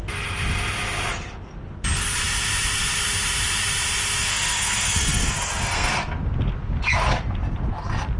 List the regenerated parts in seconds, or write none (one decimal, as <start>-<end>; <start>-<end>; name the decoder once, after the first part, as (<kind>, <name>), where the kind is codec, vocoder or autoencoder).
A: 4.3-5.9 (codec, SNAC)